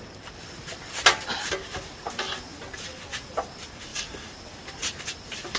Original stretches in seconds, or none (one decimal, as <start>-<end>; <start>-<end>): 0.0-5.6